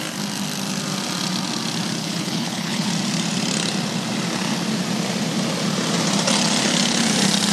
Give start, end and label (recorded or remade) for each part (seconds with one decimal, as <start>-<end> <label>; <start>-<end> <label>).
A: 0.0-2.0 recorded; 2.0-2.9 remade; 2.9-7.5 recorded